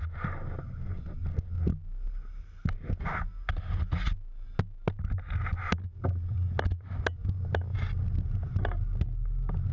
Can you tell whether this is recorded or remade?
recorded